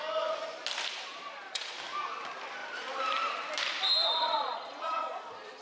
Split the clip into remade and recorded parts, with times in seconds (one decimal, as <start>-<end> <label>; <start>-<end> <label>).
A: 0.0-1.1 recorded; 1.1-1.8 remade; 1.8-4.2 recorded; 4.2-5.1 remade; 5.1-5.6 recorded